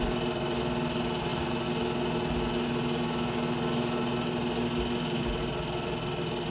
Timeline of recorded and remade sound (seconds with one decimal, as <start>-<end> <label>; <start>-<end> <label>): 0.0-6.5 recorded